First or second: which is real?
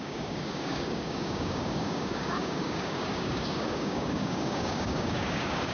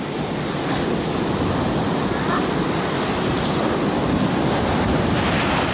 second